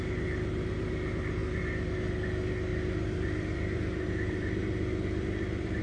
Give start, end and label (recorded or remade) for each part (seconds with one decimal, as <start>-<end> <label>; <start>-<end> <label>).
0.0-2.7 recorded; 2.7-5.8 remade